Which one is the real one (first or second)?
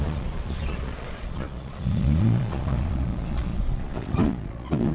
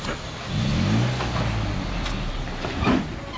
second